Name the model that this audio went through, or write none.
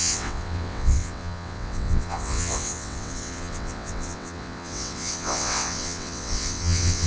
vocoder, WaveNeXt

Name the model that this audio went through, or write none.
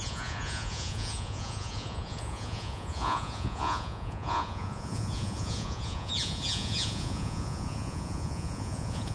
vocoder, Vocos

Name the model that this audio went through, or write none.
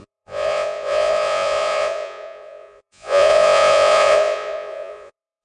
vocoder, Vocos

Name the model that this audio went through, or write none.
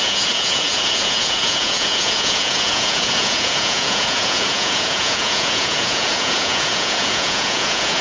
vocoder, Vocos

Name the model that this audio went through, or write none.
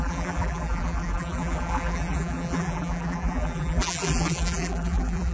vocoder, BigVGAN v2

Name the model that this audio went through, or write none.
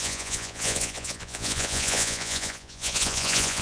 vocoder, Vocos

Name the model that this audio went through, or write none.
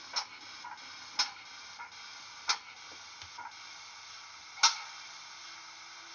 none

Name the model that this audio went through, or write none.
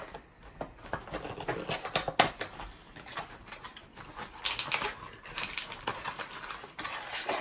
none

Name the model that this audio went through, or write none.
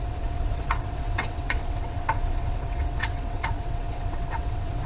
vocoder, WaveNeXt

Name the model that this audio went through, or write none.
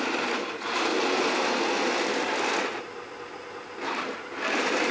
vocoder, BigVGAN v2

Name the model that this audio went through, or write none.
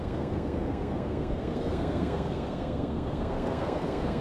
codec, SNAC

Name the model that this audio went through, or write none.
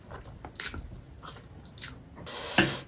none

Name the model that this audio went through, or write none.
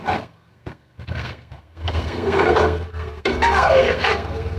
codec, SNAC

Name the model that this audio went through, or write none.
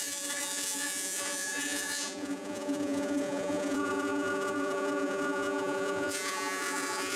vocoder, Vocos